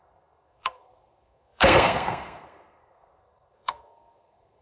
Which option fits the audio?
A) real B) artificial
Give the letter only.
B